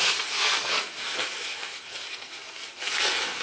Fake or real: fake